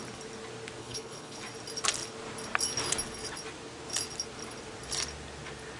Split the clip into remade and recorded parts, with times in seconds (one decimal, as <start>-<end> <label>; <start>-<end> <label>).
0.0-0.8 recorded; 0.8-1.4 remade; 1.4-5.8 recorded